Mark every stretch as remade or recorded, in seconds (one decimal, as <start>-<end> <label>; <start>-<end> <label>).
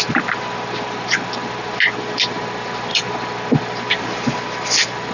0.0-5.1 recorded